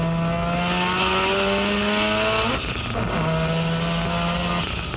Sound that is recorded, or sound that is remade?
recorded